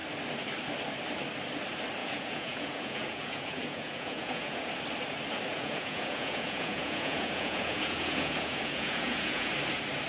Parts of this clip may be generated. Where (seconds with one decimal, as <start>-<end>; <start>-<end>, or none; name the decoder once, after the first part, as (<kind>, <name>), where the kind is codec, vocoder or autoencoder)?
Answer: 2.0-4.7 (vocoder, Vocos); 5.5-9.5